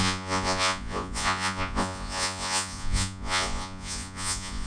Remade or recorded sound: remade